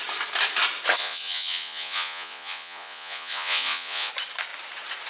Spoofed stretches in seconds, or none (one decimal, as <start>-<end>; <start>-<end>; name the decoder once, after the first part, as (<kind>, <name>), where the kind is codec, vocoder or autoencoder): 1.0-4.1 (vocoder, Vocos)